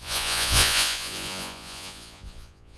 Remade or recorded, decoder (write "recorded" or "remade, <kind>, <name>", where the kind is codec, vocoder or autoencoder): remade, vocoder, Vocos